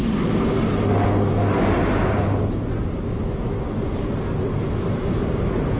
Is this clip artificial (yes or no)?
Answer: no